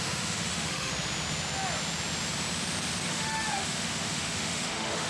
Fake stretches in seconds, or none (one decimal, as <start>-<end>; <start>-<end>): 0.0-0.9; 3.1-5.1